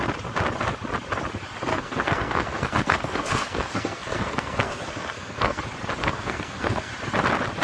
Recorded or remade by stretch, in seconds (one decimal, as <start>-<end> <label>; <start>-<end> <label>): 0.0-1.7 recorded; 1.7-5.6 remade; 5.6-6.0 recorded; 6.0-6.9 remade; 6.9-7.6 recorded